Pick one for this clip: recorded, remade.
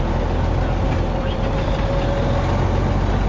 recorded